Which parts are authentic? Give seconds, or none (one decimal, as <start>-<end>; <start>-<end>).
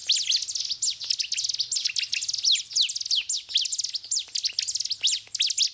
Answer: 0.0-5.7